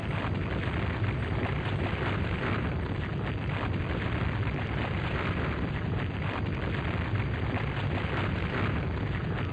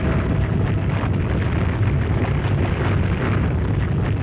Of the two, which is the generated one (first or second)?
first